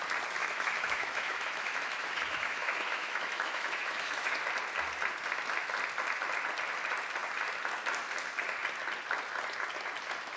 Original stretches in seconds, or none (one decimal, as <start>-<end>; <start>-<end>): 0.0-0.4; 4.3-10.4